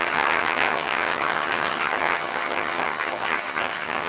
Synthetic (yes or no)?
yes